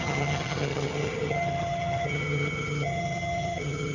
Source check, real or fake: fake